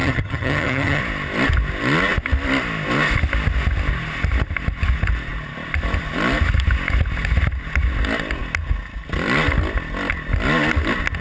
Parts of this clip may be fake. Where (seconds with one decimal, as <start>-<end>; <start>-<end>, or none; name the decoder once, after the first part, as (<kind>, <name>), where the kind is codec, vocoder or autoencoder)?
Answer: 0.0-1.0 (vocoder, HiFi-GAN)